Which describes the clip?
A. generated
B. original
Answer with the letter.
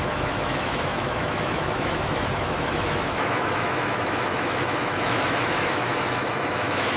A